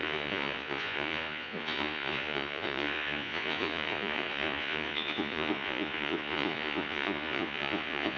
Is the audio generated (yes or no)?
yes